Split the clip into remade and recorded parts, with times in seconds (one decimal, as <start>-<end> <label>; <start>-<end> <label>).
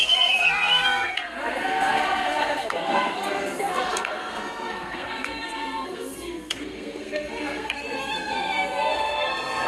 0.0-9.7 remade